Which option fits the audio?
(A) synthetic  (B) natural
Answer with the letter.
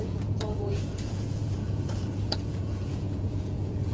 A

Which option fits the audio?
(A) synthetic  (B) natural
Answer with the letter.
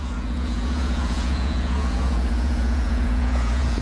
A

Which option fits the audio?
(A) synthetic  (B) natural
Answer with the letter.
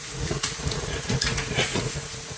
A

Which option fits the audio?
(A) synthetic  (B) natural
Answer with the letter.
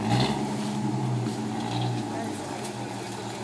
B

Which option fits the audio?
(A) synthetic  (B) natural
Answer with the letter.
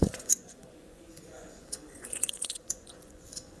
A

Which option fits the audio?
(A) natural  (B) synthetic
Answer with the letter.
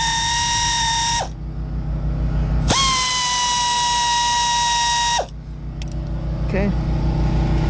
A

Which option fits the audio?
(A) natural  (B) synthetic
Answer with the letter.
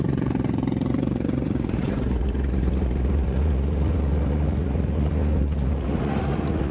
B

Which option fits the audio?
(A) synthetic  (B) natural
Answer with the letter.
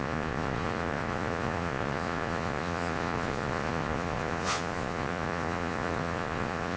A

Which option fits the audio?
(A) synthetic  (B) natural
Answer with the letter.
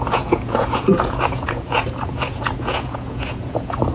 A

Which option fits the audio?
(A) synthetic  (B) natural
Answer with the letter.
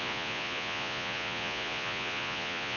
A